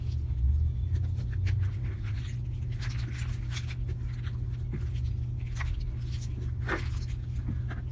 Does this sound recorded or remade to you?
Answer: recorded